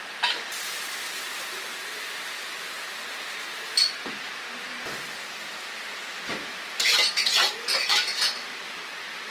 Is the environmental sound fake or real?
real